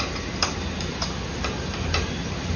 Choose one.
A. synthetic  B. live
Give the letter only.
B